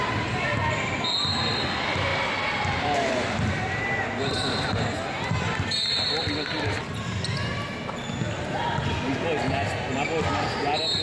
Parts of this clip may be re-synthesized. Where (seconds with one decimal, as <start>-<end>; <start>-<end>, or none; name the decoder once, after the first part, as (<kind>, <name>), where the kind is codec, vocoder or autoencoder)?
2.1-3.8 (vocoder, BigVGAN v2)